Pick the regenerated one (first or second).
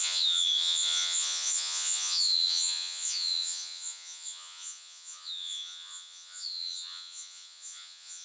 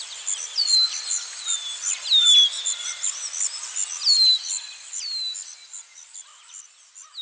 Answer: first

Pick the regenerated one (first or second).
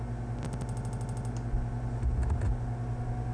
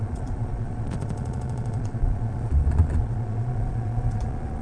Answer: second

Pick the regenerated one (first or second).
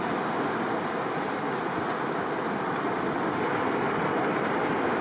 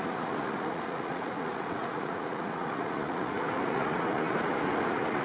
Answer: second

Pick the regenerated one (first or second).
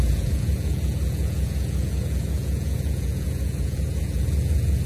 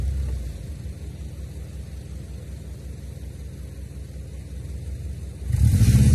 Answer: first